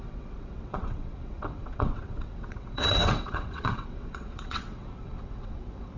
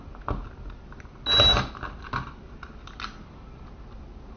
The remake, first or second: first